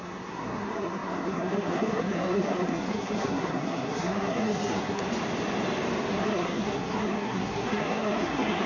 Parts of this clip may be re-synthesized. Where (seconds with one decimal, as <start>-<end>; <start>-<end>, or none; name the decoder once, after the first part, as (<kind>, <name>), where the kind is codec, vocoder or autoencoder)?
0.0-5.0 (codec, SNAC); 6.1-8.7